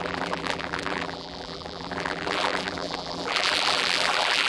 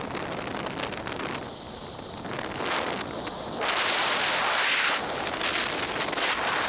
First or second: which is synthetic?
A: first